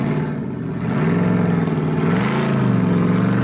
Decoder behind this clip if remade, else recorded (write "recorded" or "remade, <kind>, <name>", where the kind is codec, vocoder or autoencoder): recorded